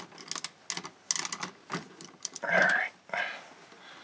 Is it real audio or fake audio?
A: real